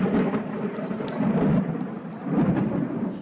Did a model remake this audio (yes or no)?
no